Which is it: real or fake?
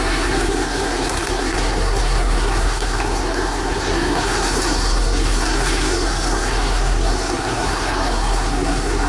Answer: fake